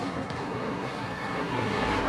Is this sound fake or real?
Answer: fake